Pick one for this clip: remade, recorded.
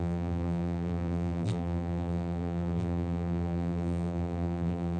remade